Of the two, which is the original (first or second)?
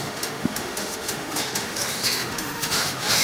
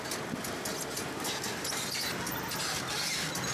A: second